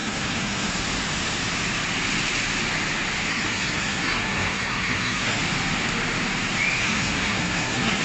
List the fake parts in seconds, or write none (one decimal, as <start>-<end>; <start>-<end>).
0.0-0.8; 3.3-5.4; 6.8-8.0